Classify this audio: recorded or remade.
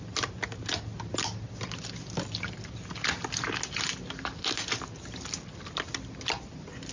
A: recorded